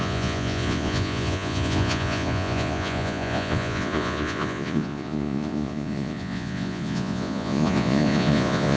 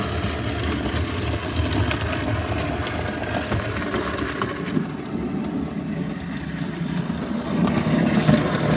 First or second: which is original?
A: second